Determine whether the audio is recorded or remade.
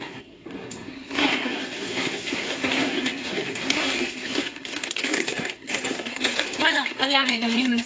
remade